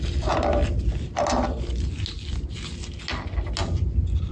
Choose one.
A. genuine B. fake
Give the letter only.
A